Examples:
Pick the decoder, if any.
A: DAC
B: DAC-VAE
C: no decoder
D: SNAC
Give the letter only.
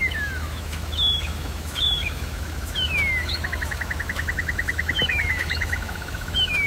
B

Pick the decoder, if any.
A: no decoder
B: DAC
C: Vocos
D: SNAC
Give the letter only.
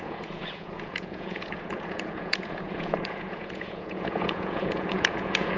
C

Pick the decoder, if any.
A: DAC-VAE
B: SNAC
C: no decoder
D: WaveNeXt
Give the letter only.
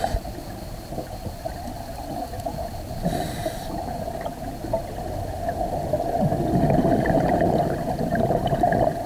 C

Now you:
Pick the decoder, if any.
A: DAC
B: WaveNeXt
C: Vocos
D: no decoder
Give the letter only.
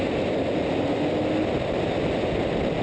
D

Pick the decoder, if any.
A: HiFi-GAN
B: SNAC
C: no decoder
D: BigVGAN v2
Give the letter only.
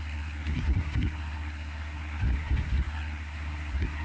B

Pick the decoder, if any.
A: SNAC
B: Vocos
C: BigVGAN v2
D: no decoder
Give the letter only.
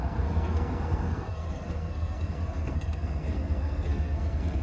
A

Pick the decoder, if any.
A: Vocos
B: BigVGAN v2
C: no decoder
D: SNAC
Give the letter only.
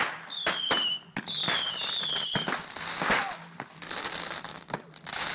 C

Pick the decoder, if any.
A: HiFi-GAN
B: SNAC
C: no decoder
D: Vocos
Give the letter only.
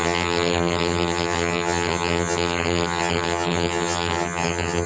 A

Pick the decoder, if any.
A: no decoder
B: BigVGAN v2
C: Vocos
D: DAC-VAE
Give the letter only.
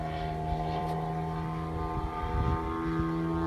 A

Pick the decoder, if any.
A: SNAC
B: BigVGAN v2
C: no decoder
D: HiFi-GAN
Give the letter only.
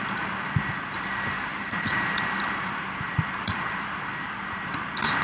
B